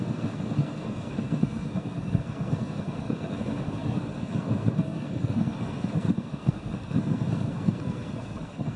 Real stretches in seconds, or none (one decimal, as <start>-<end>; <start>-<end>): none